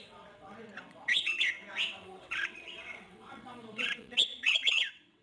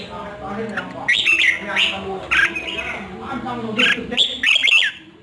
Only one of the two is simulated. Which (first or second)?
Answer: first